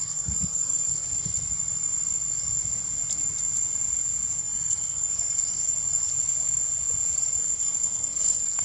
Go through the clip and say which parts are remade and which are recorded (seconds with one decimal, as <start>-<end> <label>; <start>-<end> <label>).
0.0-1.3 remade; 1.3-4.4 recorded; 4.4-5.6 remade; 5.6-7.4 recorded; 7.4-8.6 remade